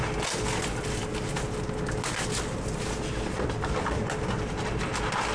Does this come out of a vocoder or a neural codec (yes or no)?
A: no